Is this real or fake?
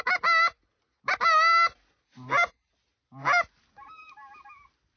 real